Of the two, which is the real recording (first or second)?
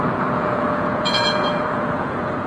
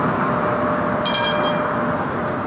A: second